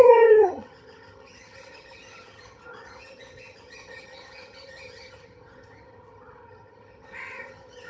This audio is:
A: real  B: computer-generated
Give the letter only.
B